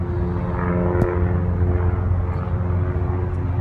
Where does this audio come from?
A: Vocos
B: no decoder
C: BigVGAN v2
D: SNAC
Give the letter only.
B